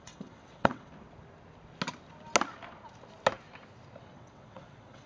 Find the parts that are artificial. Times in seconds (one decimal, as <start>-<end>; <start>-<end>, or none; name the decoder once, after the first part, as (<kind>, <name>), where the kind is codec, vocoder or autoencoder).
0.0-0.9 (vocoder, WaveNeXt); 4.0-5.1